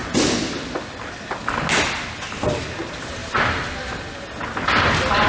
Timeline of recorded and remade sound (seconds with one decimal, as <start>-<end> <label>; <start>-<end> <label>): 0.0-5.3 recorded